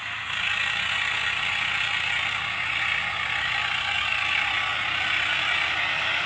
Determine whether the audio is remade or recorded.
recorded